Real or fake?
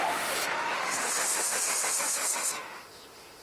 fake